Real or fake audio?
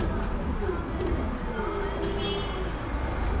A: real